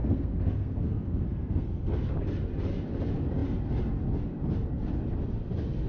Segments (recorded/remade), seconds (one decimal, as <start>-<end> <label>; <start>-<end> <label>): 0.0-2.0 remade; 2.0-5.9 recorded